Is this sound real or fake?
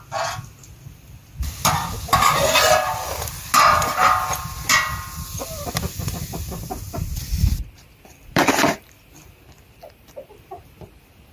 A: real